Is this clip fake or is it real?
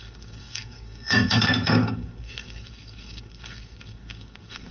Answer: fake